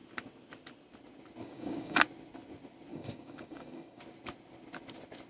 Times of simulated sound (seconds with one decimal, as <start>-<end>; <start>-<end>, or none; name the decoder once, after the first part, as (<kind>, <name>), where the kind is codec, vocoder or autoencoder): 1.4-2.0 (codec, DAC); 2.9-4.0